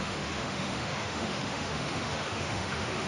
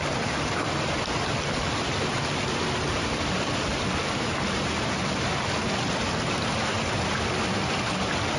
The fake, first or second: first